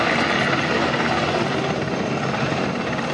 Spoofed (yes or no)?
no